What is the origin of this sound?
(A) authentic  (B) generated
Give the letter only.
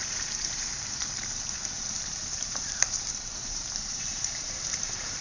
B